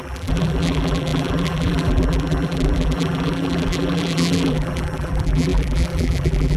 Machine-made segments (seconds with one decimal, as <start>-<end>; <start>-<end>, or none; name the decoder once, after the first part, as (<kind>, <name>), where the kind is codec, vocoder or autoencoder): 0.0-6.6 (vocoder, BigVGAN v2)